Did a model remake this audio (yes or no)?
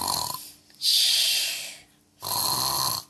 no